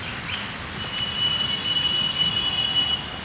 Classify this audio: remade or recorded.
recorded